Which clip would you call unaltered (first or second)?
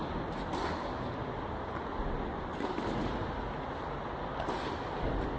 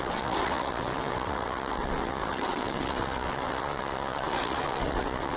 first